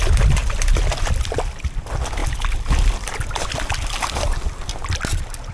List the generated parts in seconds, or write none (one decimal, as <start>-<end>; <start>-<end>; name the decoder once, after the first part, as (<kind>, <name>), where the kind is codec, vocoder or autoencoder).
0.4-1.8 (vocoder, BigVGAN v2)